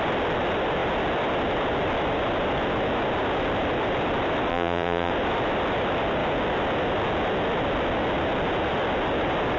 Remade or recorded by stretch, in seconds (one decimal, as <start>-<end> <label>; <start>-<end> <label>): 0.0-4.5 recorded; 4.5-5.1 remade; 5.1-9.6 recorded